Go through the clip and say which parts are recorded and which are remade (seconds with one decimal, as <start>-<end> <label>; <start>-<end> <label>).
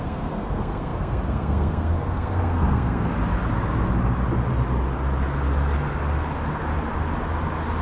0.0-3.1 remade; 3.1-7.8 recorded